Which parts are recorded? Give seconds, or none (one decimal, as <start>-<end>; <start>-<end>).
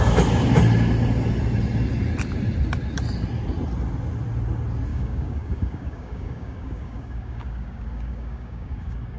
0.0-4.9